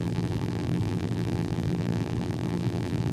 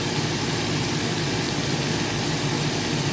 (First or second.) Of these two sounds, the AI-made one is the first